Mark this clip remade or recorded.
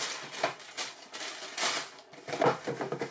recorded